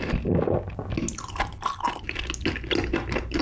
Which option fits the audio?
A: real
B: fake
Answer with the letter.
A